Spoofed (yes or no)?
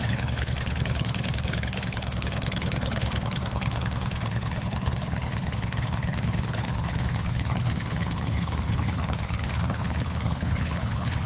yes